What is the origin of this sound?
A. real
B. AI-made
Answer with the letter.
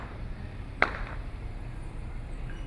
B